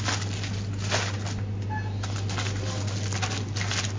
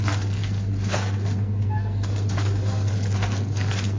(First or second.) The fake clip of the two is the second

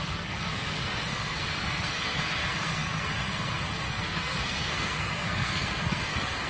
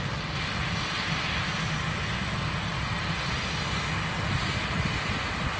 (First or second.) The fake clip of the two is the first